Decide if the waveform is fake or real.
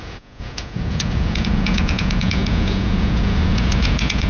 fake